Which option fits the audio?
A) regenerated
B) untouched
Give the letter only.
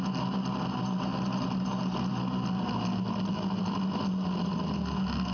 B